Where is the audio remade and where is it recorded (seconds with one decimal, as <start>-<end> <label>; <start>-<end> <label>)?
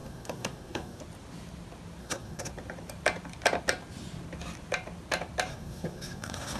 0.0-1.0 remade; 1.0-2.0 recorded; 2.0-2.5 remade; 2.5-5.5 recorded; 5.5-6.6 remade